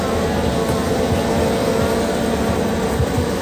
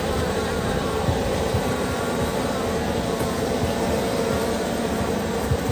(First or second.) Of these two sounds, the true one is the first